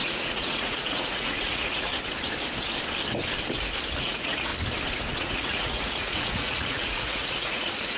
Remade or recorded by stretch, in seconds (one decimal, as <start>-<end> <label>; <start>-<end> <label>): 0.0-1.9 remade; 1.9-4.0 recorded; 4.0-4.5 remade; 4.5-5.2 recorded; 5.2-8.0 remade